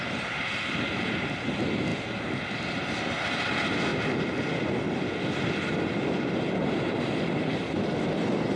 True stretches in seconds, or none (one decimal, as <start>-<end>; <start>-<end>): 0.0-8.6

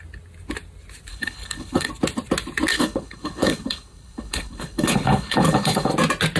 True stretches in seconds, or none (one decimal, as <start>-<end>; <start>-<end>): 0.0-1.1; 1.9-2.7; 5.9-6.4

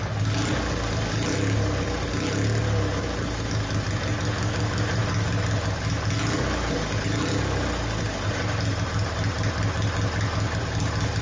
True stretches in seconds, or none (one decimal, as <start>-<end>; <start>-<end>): 0.0-11.2

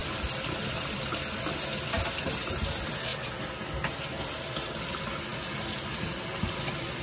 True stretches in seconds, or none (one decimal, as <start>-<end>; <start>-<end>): 0.0-7.0

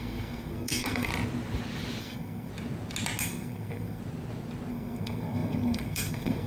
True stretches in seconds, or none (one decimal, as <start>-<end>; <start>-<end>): 1.1-2.0; 2.5-3.2; 4.0-4.7

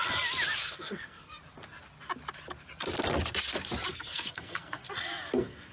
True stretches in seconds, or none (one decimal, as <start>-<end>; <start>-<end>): 0.0-0.6; 1.4-3.9; 4.8-5.3